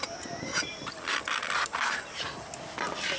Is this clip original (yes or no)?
yes